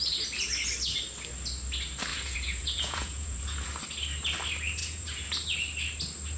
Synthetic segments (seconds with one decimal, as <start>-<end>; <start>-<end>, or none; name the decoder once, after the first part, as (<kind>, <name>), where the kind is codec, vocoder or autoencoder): 2.1-3.7 (vocoder, Vocos); 4.8-5.3